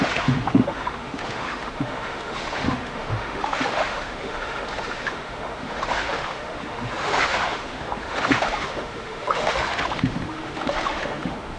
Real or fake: fake